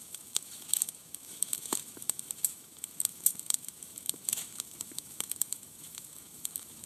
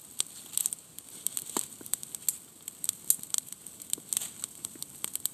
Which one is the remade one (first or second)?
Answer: first